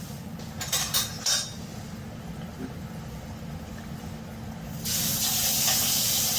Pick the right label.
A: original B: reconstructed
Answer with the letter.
A